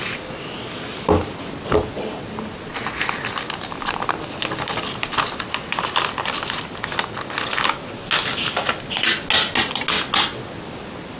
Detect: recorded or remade recorded